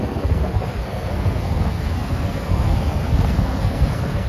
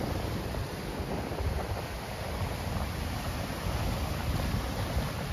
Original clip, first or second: second